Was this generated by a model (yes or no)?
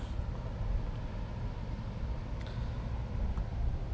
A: no